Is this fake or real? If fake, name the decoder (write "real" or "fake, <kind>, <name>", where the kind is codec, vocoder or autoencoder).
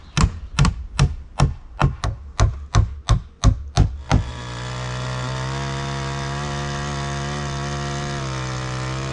real